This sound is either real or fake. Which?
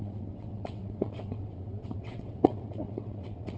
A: fake